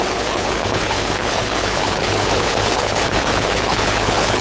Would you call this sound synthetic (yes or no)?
yes